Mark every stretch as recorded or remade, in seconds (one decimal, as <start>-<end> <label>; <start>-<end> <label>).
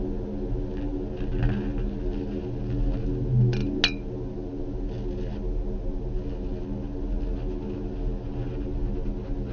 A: 0.0-9.5 recorded